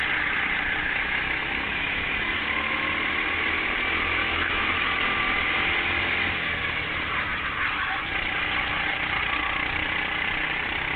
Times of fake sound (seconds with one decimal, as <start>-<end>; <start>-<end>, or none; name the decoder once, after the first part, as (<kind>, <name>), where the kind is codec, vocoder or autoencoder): 0.8-2.1 (autoencoder, DAC-VAE); 4.2-4.8